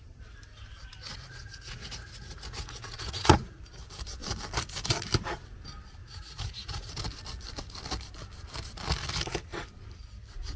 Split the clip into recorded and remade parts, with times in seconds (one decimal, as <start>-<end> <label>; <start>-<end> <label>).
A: 0.0-1.1 recorded; 1.1-3.6 remade; 3.6-6.0 recorded; 6.0-6.9 remade; 6.9-10.6 recorded